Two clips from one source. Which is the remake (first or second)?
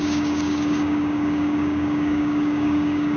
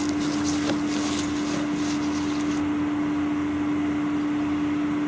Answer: first